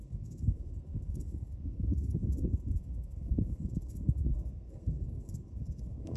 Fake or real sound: fake